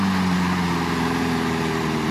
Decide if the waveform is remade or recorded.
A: remade